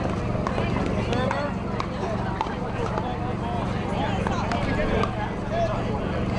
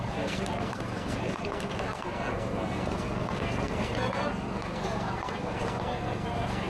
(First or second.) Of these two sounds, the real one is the first